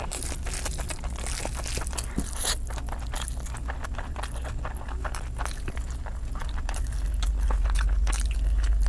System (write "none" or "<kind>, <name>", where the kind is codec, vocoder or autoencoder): none